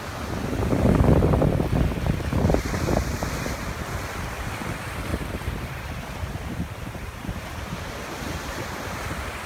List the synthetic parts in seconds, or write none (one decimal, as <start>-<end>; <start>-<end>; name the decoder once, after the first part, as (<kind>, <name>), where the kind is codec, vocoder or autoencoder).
5.1-9.0 (vocoder, BigVGAN v2)